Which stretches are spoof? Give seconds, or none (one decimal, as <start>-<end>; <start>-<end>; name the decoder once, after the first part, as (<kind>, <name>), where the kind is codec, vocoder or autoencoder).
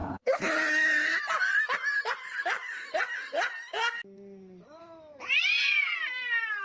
0.0-0.5 (codec, HILCodec)